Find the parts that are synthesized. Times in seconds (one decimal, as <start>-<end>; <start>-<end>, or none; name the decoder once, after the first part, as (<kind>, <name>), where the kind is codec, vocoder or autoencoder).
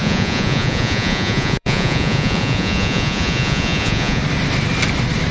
0.0-4.2 (vocoder, Vocos)